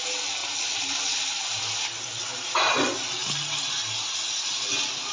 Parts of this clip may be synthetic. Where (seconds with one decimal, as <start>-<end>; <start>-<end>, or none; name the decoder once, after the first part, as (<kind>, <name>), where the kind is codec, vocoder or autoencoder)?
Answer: none